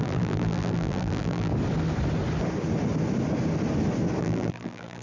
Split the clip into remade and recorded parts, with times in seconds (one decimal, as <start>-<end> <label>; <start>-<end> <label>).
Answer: 0.0-1.5 remade; 1.5-4.2 recorded; 4.2-5.0 remade

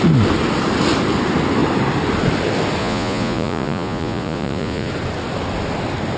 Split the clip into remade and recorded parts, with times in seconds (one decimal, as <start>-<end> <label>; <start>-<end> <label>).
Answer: 0.0-2.8 recorded; 2.8-4.9 remade; 4.9-6.2 recorded

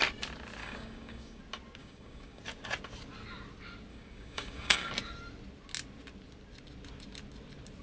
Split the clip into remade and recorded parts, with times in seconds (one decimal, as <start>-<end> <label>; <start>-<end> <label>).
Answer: 0.0-0.6 recorded; 0.6-1.4 remade; 1.4-1.8 recorded; 1.8-2.4 remade; 2.4-3.9 recorded; 3.9-4.9 remade; 4.9-7.8 recorded

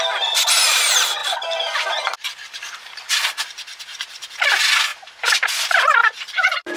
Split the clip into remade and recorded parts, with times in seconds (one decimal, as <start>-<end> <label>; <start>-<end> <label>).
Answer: 0.0-1.2 recorded; 1.2-2.0 remade; 2.0-4.9 recorded; 4.9-5.5 remade; 5.5-6.0 recorded; 6.0-6.8 remade

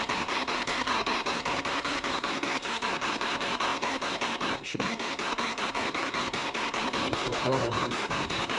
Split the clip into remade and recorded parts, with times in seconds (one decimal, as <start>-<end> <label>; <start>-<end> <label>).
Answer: 0.0-8.6 remade